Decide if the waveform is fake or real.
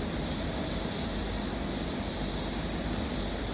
real